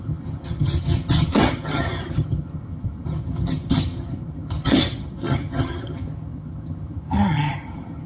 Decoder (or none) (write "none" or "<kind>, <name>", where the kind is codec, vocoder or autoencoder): vocoder, HiFi-GAN